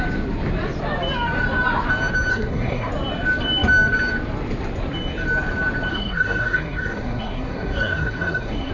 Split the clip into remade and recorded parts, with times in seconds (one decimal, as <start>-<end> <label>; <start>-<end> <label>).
0.0-2.3 recorded; 2.3-2.9 remade; 2.9-5.9 recorded; 5.9-8.7 remade